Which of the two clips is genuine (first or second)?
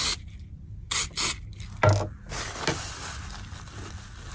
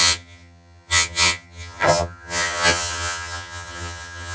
first